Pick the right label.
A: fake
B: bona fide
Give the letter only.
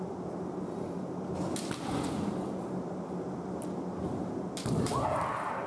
B